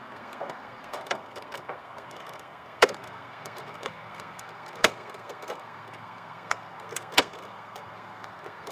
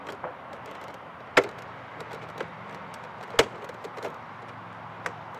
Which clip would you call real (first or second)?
second